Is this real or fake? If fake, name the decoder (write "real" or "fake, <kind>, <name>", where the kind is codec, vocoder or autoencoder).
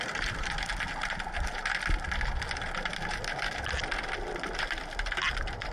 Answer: real